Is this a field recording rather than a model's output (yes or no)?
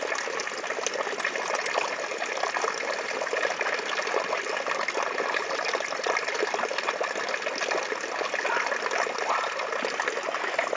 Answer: yes